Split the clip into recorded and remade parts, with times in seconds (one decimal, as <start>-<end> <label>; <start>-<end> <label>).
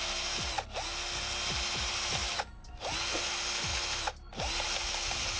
0.0-5.4 recorded